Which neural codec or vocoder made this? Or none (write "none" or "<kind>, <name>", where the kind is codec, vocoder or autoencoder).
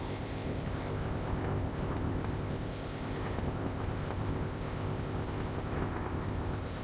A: codec, ZipCodec